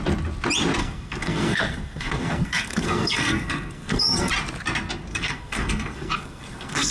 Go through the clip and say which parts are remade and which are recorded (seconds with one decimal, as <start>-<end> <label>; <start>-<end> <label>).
0.0-0.8 recorded; 0.8-4.3 remade; 4.3-5.1 recorded; 5.1-6.9 remade